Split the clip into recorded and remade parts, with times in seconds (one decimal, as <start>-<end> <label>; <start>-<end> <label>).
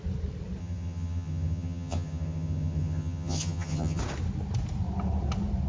0.0-0.6 recorded; 0.6-4.0 remade; 4.0-5.7 recorded